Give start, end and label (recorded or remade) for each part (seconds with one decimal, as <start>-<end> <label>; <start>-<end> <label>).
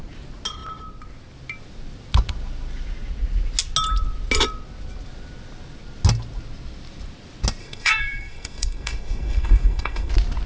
0.0-7.6 recorded; 7.6-10.1 remade; 10.1-10.5 recorded